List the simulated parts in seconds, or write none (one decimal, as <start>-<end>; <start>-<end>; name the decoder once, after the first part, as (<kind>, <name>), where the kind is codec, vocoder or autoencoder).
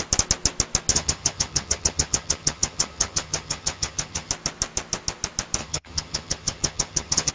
0.9-4.3 (vocoder, HiFi-GAN); 5.6-7.3